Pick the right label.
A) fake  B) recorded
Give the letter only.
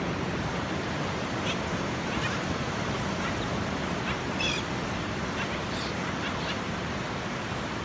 A